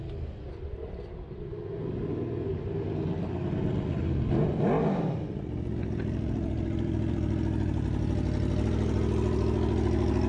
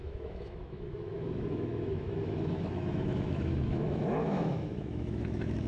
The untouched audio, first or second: first